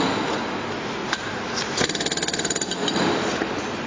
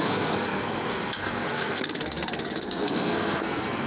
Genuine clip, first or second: first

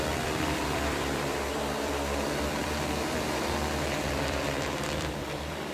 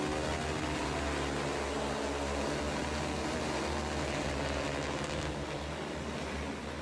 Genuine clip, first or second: second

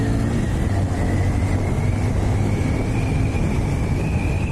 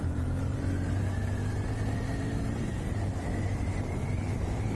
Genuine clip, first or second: first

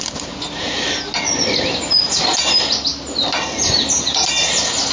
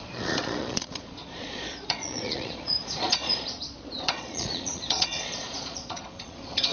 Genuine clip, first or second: first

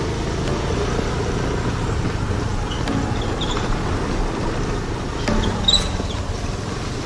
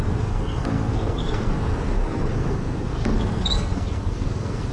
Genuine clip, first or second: first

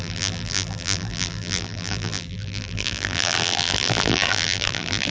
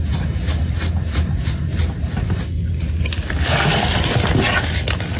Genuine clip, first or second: second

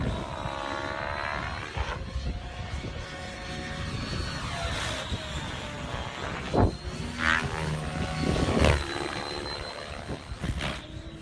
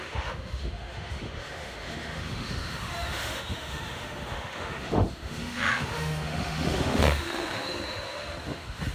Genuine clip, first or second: first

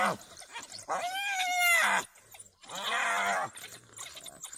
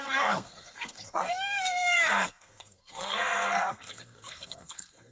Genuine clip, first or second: first